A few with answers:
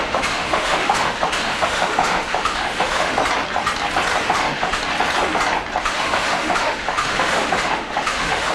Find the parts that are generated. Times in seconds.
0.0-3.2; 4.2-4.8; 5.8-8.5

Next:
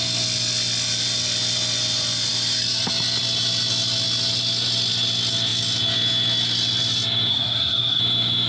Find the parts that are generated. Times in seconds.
7.3-8.0